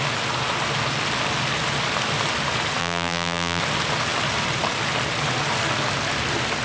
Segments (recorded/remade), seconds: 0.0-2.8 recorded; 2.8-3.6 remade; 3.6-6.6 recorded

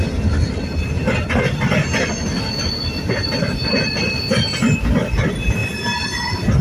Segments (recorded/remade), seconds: 0.0-6.6 recorded